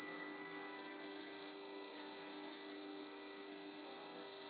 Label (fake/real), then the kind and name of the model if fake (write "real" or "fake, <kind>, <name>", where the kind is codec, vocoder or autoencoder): fake, codec, SNAC